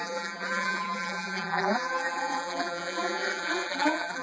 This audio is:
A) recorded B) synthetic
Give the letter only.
B